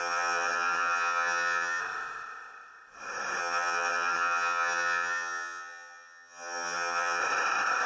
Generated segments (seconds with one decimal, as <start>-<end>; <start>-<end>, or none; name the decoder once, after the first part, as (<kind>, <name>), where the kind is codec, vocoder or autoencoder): 0.0-1.8 (vocoder, HiFi-GAN); 3.4-7.2